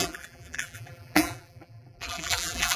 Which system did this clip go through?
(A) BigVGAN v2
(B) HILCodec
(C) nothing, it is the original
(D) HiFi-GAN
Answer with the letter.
A